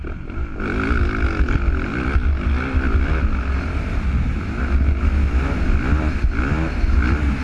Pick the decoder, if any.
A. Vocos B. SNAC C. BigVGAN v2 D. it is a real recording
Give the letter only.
D